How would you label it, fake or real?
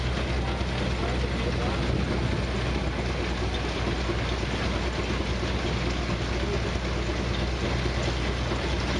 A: real